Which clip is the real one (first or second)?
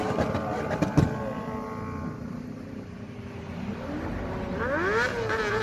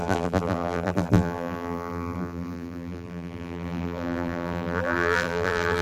first